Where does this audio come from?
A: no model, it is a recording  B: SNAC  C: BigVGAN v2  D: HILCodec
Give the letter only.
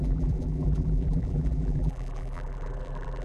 C